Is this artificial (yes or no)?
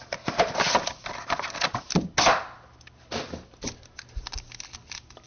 no